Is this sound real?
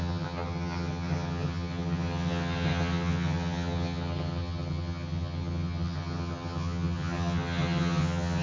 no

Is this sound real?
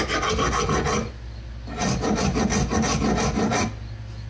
yes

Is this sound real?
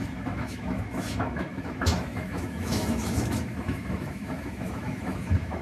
no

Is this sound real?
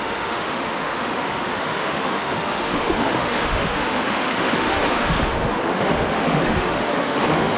no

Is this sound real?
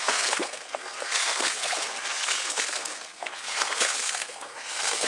no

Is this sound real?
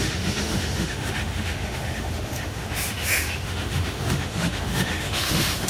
no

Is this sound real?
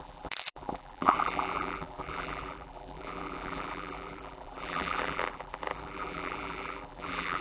no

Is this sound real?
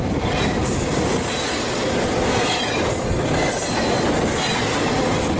yes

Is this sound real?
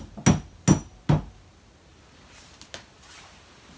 yes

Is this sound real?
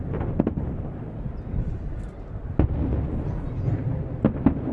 yes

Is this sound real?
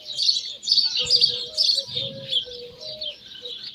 yes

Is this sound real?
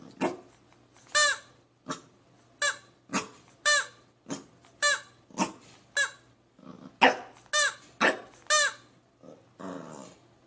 yes